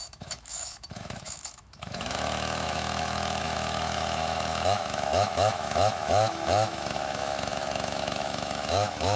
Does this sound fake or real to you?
fake